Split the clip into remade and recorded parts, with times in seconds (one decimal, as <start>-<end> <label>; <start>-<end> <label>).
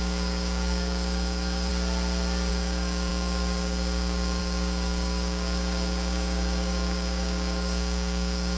0.0-1.7 remade; 1.7-2.5 recorded; 2.5-8.6 remade